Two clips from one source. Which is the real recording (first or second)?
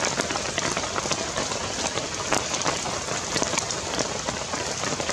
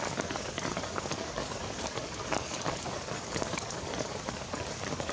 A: first